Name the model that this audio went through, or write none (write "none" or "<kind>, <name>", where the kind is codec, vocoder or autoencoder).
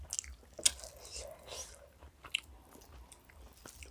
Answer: none